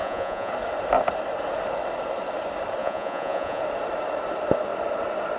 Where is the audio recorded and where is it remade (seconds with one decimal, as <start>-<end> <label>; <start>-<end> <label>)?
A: 0.0-0.5 remade; 0.5-2.8 recorded; 2.8-3.6 remade; 3.6-5.4 recorded